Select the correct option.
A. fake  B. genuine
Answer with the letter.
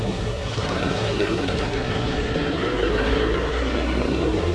A